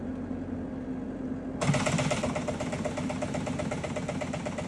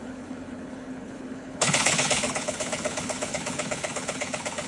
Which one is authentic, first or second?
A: first